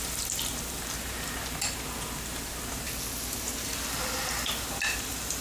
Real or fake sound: fake